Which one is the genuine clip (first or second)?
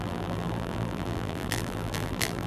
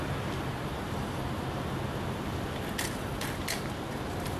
second